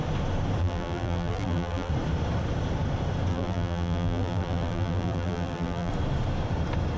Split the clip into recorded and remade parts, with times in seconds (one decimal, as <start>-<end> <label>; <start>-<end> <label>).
0.0-0.6 recorded; 0.6-1.9 remade; 1.9-3.3 recorded; 3.3-5.9 remade; 5.9-7.0 recorded